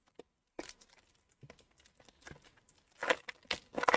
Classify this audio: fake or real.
real